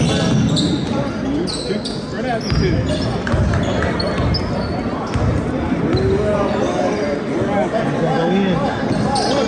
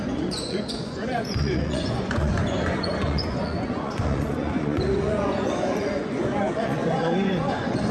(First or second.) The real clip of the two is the first